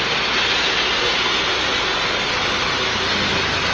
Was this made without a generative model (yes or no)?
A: yes